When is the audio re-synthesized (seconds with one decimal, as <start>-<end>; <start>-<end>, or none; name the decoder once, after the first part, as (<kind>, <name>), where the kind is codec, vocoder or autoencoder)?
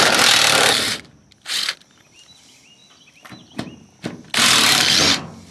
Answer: none